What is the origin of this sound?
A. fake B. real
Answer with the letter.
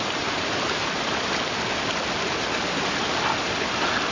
B